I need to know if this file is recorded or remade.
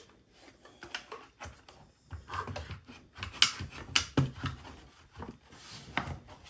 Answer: recorded